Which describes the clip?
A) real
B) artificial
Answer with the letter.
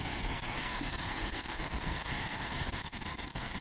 B